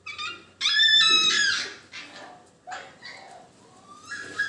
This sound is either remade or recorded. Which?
recorded